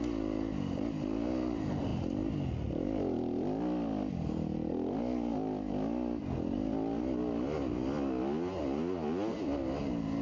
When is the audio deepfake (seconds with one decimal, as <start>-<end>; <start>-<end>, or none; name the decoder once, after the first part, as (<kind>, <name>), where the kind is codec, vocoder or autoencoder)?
none

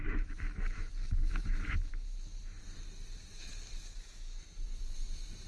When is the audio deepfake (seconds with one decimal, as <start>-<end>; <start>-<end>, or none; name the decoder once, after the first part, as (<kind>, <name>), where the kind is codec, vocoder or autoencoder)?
0.0-2.6 (autoencoder, DAC-VAE); 3.3-4.8

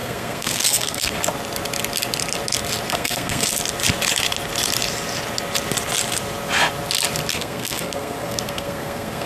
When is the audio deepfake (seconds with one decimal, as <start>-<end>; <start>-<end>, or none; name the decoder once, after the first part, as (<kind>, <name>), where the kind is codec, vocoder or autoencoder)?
0.0-1.2 (codec, SNAC); 2.9-3.5; 7.3-9.3